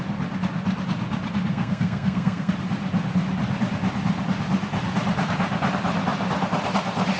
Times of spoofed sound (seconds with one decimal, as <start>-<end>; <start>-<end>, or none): 1.5-2.5